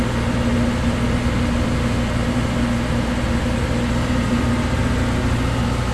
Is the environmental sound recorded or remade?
recorded